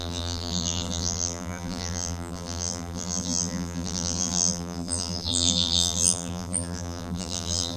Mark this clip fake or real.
fake